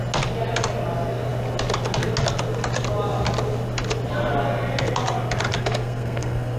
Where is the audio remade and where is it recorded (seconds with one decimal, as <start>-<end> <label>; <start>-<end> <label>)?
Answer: 0.0-5.6 recorded; 5.6-6.6 remade